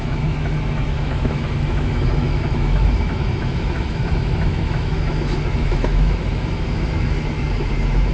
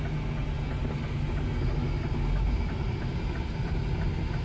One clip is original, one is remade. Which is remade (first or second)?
first